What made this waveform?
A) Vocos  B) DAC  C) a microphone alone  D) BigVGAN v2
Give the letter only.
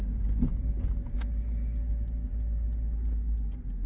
C